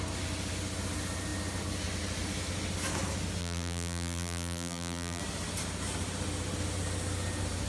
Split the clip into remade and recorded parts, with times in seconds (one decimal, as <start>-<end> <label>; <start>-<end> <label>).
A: 0.0-3.4 recorded; 3.4-5.2 remade; 5.2-7.7 recorded